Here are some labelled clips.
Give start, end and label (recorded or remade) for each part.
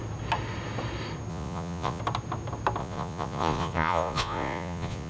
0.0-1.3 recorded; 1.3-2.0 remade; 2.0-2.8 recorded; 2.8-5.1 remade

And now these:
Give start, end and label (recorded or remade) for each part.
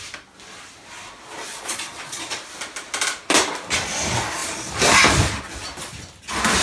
0.0-1.5 recorded; 1.5-2.4 remade; 2.4-6.6 recorded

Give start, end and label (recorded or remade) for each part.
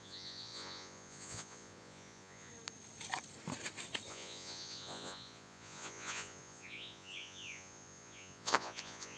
0.0-2.5 remade; 2.5-4.1 recorded; 4.1-9.2 remade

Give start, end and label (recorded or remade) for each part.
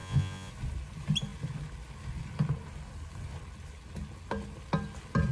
0.0-0.5 remade; 0.5-5.3 recorded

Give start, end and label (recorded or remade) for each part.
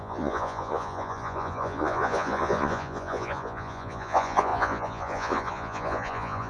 0.0-6.5 remade